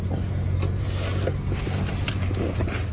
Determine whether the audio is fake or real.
real